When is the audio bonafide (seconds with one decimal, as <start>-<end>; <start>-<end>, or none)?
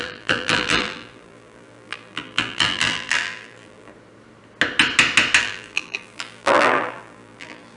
3.9-5.4